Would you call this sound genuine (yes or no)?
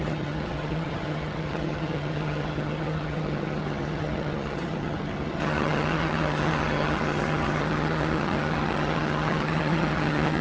no